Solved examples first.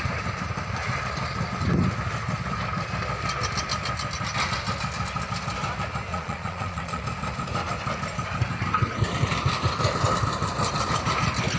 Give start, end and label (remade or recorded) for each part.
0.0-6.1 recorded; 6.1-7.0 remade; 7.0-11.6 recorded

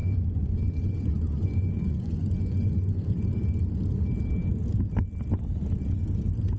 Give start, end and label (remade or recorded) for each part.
0.0-3.1 remade; 3.1-6.6 recorded

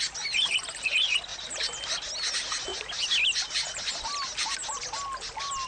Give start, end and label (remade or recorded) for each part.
0.0-5.7 recorded

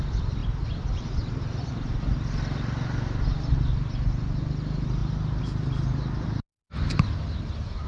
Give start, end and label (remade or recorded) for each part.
0.0-7.9 recorded

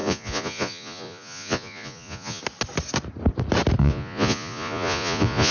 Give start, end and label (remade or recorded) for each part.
0.0-2.4 remade; 2.4-3.8 recorded; 3.8-5.5 remade

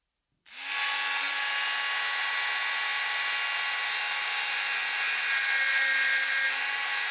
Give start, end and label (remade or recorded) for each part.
0.0-7.1 recorded

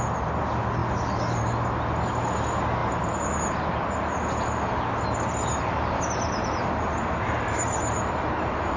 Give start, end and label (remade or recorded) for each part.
0.0-8.8 recorded

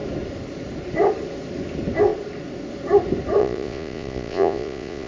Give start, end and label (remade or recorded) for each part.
0.0-3.4 recorded; 3.4-5.1 remade